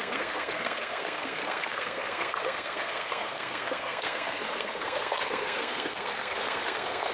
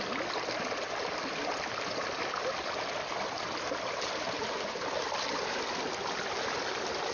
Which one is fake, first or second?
first